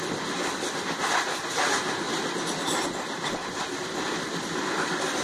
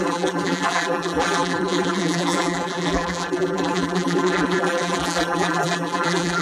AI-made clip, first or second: second